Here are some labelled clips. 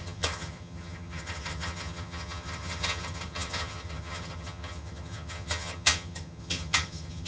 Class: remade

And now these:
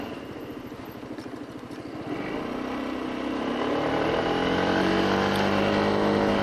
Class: recorded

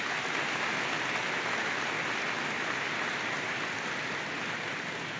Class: recorded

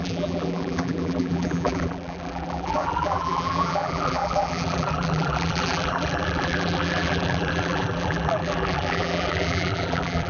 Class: remade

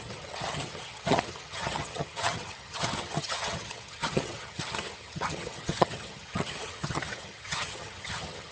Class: remade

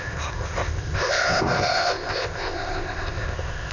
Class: remade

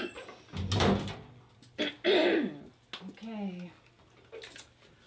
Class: recorded